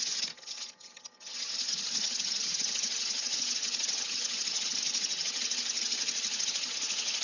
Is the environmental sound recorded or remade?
remade